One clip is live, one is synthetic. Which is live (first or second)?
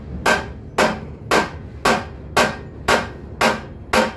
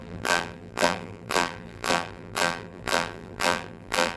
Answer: first